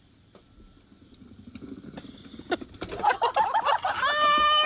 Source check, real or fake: real